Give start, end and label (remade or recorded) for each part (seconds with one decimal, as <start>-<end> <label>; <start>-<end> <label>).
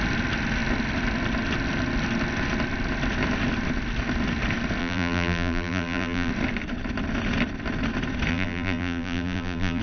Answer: 0.0-4.8 recorded; 4.8-6.3 remade; 6.3-8.3 recorded; 8.3-9.8 remade